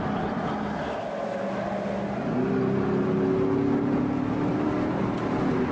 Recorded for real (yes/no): yes